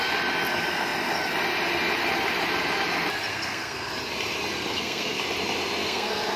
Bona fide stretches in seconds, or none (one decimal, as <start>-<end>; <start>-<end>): 0.0-3.3; 3.9-4.7; 5.2-5.8